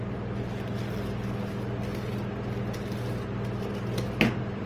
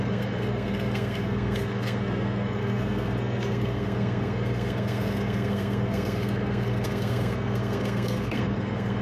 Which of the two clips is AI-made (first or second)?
second